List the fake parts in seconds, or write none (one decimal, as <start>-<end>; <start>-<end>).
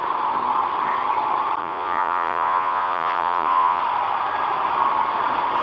1.6-3.8